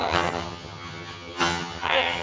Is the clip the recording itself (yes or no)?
no